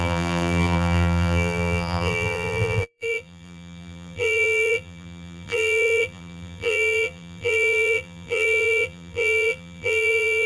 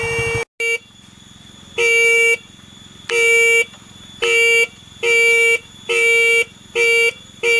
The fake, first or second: first